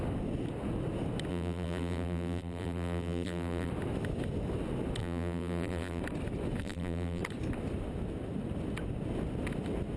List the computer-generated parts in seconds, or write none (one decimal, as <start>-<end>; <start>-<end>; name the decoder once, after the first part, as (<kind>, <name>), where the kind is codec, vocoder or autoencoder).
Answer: 1.3-3.7 (vocoder, BigVGAN v2); 5.0-6.0; 6.6-7.2